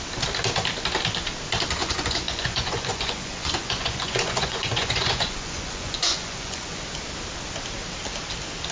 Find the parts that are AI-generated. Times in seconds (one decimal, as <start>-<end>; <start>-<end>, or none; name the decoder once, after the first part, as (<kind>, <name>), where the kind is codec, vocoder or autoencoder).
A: 1.8-6.8 (vocoder, Vocos)